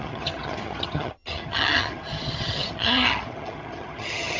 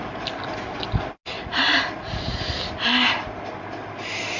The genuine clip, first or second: second